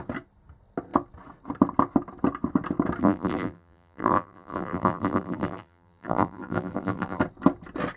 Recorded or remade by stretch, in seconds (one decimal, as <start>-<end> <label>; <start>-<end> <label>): 0.0-3.0 recorded; 3.0-7.2 remade; 7.2-8.0 recorded